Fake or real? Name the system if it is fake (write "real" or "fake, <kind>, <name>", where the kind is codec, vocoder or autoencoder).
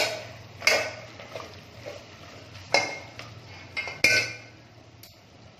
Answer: real